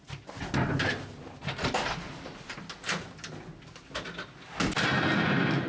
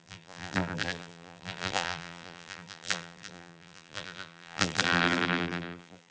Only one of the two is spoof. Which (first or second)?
second